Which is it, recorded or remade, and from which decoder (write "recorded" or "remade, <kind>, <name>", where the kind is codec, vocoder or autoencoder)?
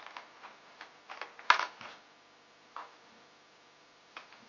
recorded